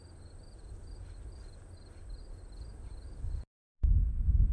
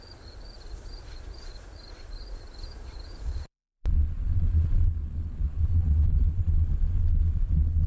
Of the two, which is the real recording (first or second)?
first